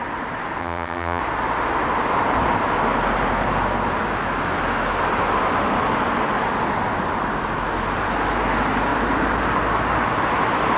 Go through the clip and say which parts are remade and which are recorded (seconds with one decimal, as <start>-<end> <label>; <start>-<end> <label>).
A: 0.0-0.6 recorded; 0.6-1.2 remade; 1.2-10.8 recorded